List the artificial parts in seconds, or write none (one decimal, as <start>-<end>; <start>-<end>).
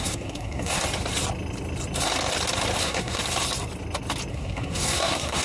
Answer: 0.0-0.8; 2.8-3.2; 4.3-5.4